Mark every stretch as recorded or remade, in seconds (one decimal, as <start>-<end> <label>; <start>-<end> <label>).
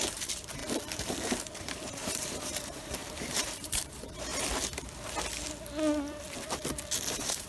0.0-0.6 remade; 0.6-1.6 recorded; 1.6-4.3 remade; 4.3-7.1 recorded; 7.1-7.5 remade